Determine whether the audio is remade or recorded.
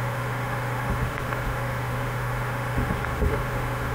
remade